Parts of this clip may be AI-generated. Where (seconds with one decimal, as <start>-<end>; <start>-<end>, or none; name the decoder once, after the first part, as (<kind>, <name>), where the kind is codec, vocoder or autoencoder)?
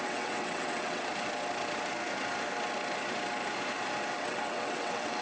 0.0-1.1 (vocoder, WaveNeXt); 4.2-5.2